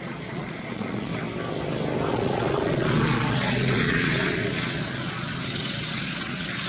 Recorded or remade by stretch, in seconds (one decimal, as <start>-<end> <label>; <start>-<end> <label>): 0.0-1.1 remade; 1.1-2.1 recorded; 2.1-6.7 remade